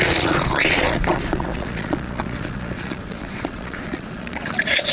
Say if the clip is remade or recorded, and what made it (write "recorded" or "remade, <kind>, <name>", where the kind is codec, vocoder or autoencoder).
remade, vocoder, Vocos